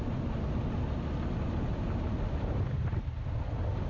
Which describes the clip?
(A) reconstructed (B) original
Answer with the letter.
B